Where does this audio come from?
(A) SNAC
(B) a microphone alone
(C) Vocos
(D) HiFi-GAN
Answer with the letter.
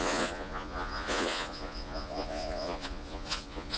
C